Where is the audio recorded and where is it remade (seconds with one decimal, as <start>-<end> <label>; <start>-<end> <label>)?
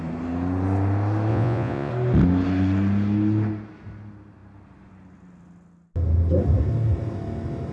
0.0-1.3 recorded; 1.3-1.9 remade; 1.9-7.7 recorded